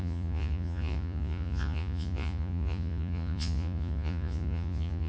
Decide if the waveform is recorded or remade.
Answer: remade